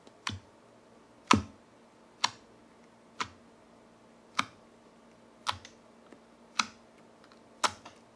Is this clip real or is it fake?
real